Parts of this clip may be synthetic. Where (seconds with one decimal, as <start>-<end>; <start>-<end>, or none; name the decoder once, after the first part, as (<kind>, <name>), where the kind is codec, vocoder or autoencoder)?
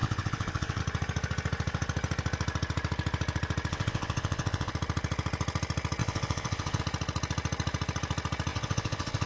0.0-0.8 (vocoder, WaveNeXt); 3.7-4.7; 6.0-6.8; 8.5-9.3